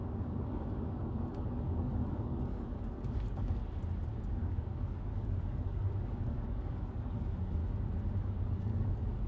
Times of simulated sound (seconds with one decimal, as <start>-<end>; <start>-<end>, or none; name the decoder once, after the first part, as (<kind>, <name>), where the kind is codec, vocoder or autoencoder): 0.0-3.6 (codec, DAC); 4.3-7.6; 8.2-9.3